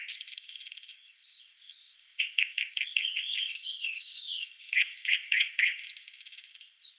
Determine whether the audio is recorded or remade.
remade